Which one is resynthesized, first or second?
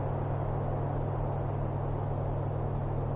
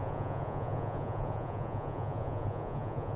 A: second